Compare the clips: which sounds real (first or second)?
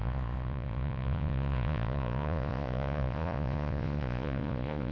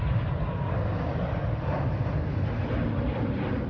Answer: second